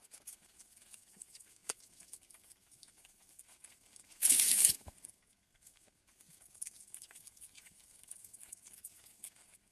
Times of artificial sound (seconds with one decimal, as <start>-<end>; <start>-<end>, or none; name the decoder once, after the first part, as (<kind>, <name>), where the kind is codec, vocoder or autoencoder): 0.0-9.7 (codec, SNAC)